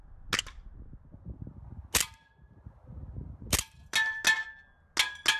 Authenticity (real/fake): real